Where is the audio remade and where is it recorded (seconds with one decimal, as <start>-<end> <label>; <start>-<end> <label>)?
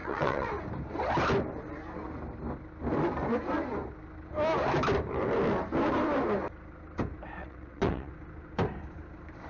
0.0-0.5 remade; 0.5-7.4 recorded; 7.4-8.1 remade; 8.1-9.5 recorded